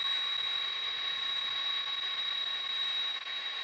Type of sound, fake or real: real